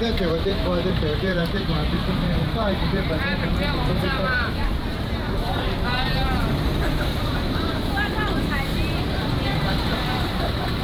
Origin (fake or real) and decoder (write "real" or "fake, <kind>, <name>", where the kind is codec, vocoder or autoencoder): fake, vocoder, BigVGAN v2